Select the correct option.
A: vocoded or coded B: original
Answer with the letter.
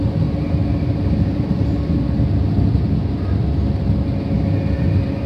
B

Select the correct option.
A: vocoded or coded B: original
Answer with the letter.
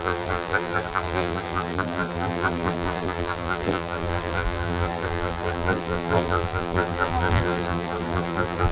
A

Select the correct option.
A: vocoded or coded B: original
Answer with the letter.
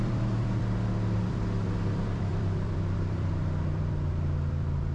A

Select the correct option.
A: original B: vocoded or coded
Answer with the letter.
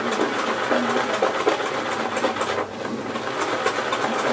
A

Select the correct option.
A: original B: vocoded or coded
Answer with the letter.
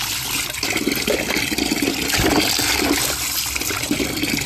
A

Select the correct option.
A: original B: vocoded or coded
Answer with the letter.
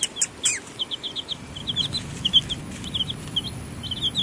A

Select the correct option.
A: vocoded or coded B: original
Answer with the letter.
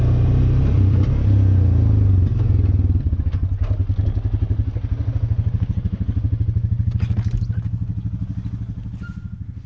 B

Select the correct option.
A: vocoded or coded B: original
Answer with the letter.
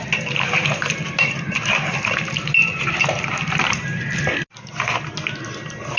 B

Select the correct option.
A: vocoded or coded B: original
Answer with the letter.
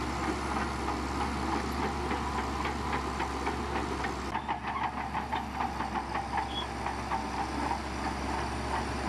B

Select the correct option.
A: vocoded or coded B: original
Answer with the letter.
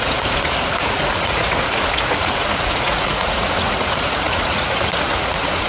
A